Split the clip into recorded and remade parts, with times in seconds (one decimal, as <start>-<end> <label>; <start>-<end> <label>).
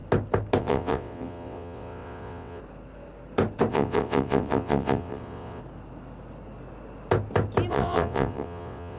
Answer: 0.0-0.6 recorded; 0.6-2.6 remade; 2.6-3.7 recorded; 3.7-5.6 remade; 5.6-7.7 recorded; 7.7-9.0 remade